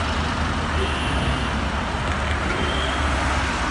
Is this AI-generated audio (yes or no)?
no